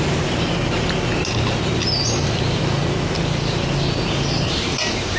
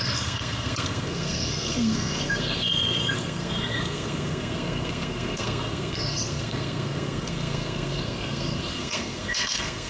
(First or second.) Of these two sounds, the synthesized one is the second